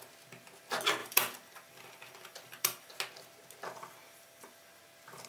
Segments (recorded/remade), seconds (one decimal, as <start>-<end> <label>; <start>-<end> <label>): 0.0-1.0 recorded; 1.0-2.9 remade; 2.9-4.0 recorded; 4.0-4.8 remade; 4.8-5.3 recorded